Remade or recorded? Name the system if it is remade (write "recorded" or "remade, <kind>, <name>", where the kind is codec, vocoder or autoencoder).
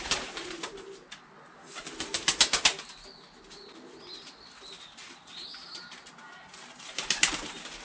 recorded